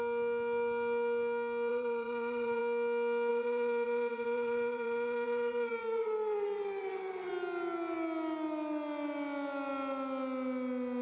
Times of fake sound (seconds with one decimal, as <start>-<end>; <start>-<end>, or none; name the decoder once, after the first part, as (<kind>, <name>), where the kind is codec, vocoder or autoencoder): 1.7-2.6 (vocoder, WaveNeXt); 3.3-7.3